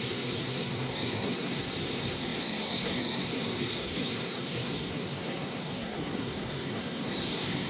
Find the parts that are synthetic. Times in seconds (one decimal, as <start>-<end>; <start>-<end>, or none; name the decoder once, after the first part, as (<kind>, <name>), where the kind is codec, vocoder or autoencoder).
0.0-7.7 (codec, SNAC)